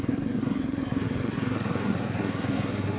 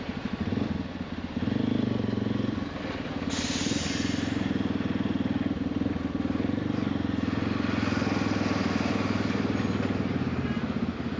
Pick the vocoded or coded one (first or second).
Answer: first